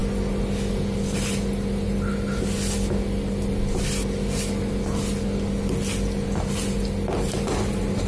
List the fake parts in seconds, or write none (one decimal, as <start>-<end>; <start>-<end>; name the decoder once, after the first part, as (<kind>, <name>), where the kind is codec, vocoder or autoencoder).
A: none